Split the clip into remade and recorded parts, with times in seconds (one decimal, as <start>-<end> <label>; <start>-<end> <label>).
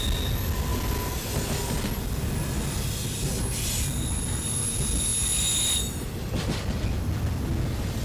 0.0-8.0 recorded